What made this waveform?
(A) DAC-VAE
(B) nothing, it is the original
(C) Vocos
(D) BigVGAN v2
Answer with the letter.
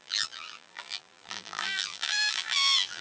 D